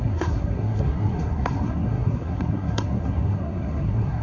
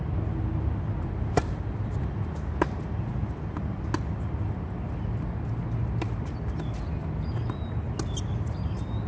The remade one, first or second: first